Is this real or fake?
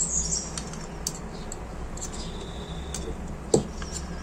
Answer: real